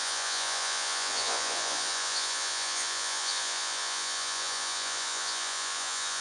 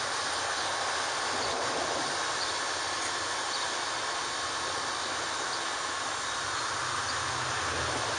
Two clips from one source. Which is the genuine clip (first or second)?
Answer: second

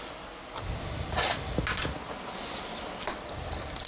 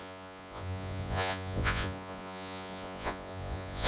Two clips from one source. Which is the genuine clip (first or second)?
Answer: first